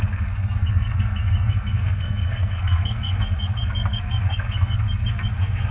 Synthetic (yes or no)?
yes